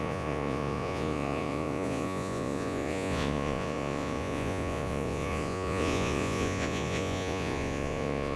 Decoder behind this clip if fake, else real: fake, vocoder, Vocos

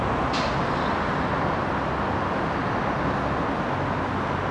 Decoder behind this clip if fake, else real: real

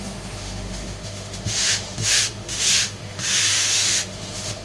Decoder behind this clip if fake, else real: fake, autoencoder, DAC-VAE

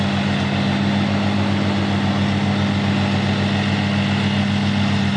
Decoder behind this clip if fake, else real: real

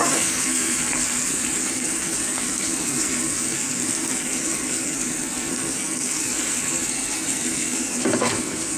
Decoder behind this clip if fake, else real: fake, codec, SNAC